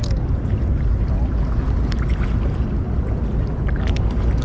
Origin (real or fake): real